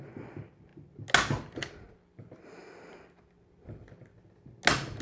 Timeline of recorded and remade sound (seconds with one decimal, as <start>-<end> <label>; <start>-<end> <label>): 0.0-5.0 recorded